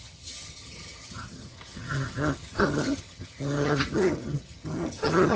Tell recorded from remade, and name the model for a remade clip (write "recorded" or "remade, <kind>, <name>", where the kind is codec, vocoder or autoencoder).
remade, vocoder, HiFi-GAN